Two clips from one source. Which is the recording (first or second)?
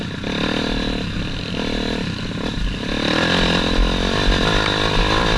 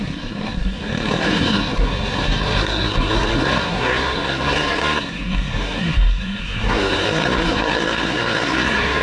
first